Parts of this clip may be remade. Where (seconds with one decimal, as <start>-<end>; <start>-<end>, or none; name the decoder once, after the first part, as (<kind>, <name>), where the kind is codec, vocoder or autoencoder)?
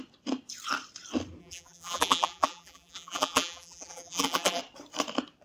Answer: 1.4-4.6 (vocoder, BigVGAN v2)